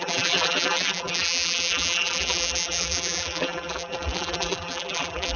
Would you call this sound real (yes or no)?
no